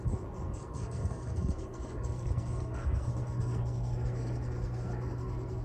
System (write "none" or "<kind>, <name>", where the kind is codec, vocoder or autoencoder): codec, SNAC